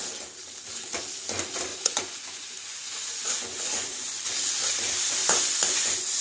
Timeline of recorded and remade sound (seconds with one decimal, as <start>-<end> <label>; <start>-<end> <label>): 0.0-1.7 recorded; 1.7-4.2 remade; 4.2-5.2 recorded; 5.2-6.2 remade